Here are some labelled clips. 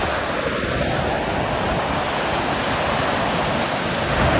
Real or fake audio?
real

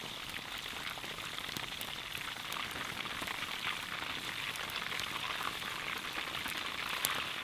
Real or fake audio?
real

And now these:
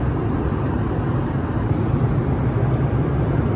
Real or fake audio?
real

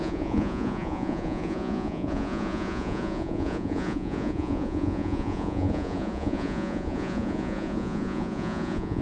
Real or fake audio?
fake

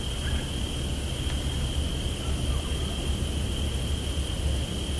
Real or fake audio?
real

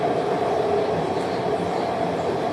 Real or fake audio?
fake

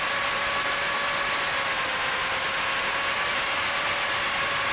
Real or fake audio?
real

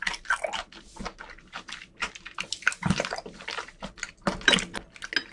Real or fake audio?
real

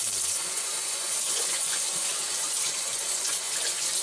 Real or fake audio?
fake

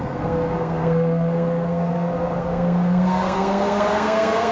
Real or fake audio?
fake